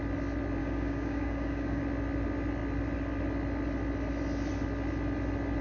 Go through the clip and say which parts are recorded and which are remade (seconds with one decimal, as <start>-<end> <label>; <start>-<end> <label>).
0.0-0.6 recorded; 0.6-1.8 remade; 1.8-5.6 recorded